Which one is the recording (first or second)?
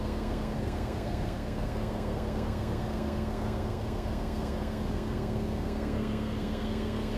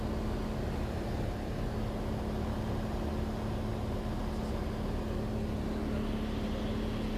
second